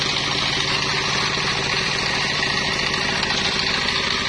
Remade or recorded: recorded